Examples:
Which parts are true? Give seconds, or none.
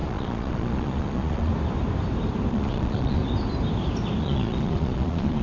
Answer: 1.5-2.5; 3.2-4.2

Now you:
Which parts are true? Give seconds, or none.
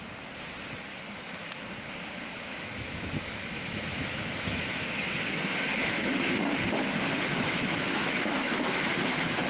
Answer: 0.0-0.9; 1.6-2.5; 4.8-5.7; 6.3-7.3; 9.0-9.5